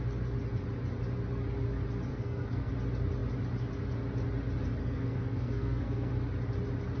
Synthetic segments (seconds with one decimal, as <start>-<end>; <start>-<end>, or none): 2.1-2.7; 4.8-6.1